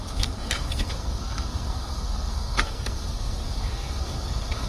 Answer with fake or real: fake